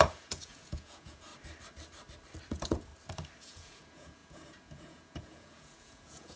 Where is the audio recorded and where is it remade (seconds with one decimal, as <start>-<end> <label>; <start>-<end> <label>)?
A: 0.0-1.3 remade; 1.3-2.5 recorded; 2.5-2.9 remade; 2.9-3.4 recorded; 3.4-6.4 remade